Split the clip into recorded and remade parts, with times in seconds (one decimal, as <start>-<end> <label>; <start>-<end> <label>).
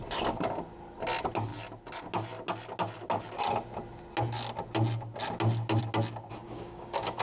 0.0-6.4 recorded; 6.4-7.2 remade